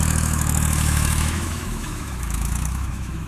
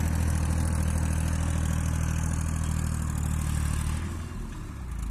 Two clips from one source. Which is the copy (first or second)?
first